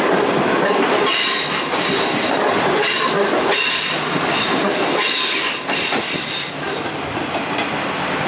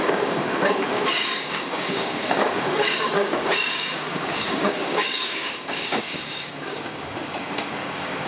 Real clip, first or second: first